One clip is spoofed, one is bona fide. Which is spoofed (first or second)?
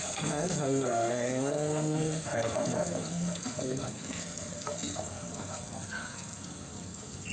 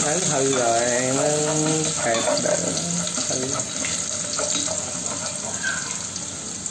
first